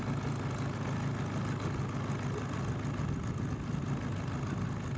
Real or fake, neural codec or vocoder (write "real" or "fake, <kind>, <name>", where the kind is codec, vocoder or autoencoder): real